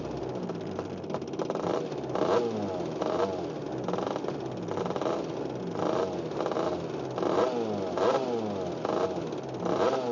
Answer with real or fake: real